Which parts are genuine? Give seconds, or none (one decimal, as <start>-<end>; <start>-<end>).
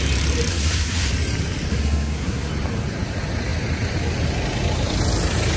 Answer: 0.0-0.5; 1.1-1.7; 2.5-5.6